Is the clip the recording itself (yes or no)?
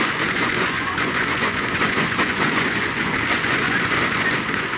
no